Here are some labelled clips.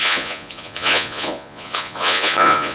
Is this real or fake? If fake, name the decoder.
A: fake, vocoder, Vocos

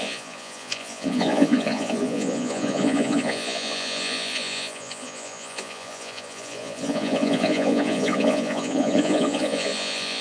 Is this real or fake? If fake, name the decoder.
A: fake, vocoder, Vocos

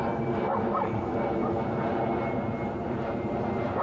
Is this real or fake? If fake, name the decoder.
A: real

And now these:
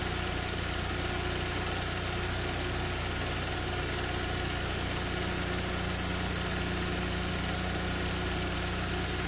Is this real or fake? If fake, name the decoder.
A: real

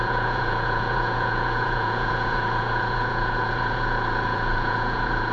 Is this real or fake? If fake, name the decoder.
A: fake, vocoder, Vocos